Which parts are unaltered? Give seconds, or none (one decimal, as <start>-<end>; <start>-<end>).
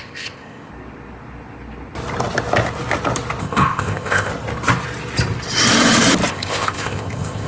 0.7-3.4; 4.3-6.3